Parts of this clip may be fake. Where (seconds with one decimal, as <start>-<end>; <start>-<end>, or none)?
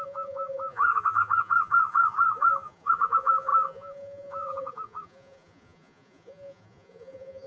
0.0-7.5